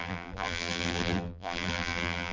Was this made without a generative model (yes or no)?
no